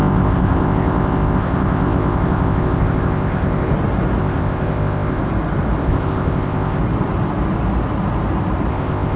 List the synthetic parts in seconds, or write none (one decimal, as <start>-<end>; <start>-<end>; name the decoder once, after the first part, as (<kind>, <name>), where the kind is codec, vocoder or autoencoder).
0.0-3.7 (codec, ZipCodec); 4.2-5.2; 5.8-6.8; 8.7-9.2